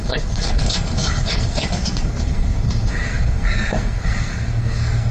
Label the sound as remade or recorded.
remade